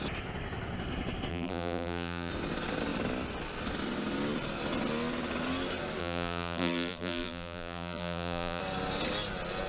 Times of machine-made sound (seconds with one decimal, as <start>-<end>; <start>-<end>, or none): 1.3-2.3; 6.0-8.6